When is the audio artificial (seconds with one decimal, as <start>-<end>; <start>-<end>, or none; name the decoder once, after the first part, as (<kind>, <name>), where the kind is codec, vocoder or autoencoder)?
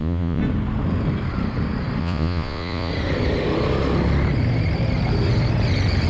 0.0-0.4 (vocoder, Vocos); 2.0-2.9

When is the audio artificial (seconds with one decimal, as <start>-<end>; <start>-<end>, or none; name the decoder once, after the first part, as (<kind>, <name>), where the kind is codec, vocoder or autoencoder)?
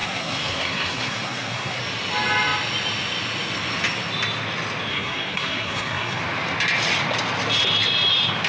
0.0-1.8 (codec, SNAC); 4.9-6.2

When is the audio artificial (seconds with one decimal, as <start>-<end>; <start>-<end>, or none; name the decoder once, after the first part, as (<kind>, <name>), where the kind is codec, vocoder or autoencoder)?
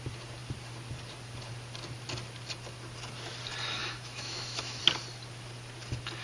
3.8-4.8 (autoencoder, DAC-VAE)